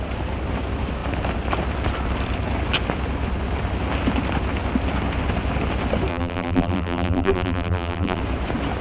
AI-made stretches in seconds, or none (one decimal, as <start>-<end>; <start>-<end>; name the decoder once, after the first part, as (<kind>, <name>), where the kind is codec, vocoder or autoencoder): 6.1-8.2 (vocoder, BigVGAN v2)